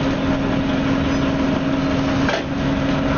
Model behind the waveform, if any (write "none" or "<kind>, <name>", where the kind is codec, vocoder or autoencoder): none